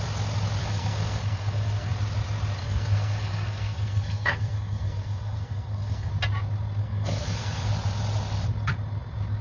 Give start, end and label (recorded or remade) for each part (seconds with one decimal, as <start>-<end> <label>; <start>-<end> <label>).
0.0-0.6 recorded; 0.6-1.9 remade; 1.9-2.6 recorded; 2.6-6.1 remade; 6.1-6.8 recorded; 6.8-7.7 remade; 7.7-9.4 recorded